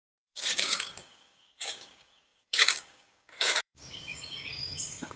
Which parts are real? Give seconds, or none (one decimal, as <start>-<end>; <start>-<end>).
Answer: none